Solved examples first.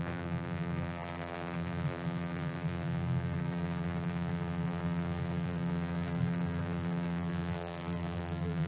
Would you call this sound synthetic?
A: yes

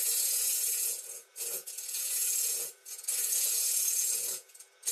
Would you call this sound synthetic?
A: yes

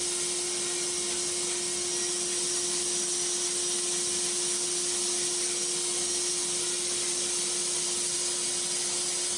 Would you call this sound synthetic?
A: no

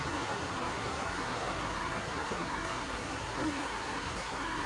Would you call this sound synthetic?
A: yes